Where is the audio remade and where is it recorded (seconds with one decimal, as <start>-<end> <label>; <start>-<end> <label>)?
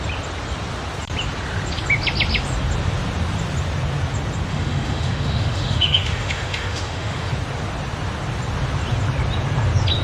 0.0-4.5 recorded; 4.5-7.3 remade; 7.3-10.0 recorded